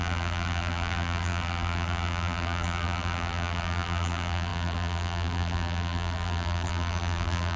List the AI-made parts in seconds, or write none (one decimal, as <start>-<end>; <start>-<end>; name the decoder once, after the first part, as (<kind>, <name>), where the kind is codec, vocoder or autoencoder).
0.0-7.6 (vocoder, BigVGAN v2)